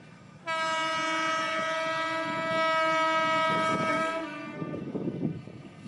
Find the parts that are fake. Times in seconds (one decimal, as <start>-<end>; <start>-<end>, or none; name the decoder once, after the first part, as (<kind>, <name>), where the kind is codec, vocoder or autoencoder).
0.0-0.4 (codec, SNAC); 3.9-5.9